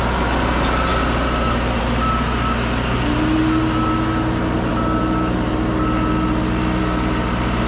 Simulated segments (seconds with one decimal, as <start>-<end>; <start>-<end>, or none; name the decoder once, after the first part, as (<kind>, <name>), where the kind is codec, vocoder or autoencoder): none